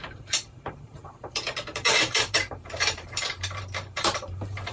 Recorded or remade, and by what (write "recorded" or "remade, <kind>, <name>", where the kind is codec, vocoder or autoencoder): remade, vocoder, BigVGAN v2